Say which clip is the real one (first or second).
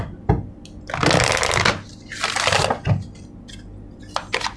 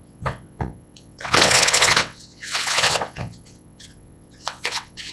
first